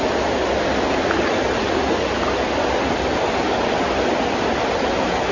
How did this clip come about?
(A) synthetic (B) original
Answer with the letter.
B